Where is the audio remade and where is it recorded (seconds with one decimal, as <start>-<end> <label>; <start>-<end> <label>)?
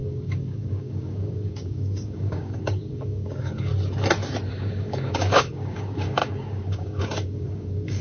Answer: 0.0-3.7 remade; 3.7-4.5 recorded; 4.5-8.0 remade